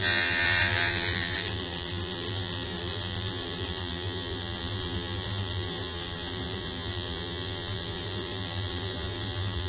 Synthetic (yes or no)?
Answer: yes